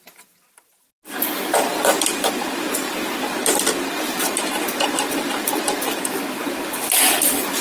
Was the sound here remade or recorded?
recorded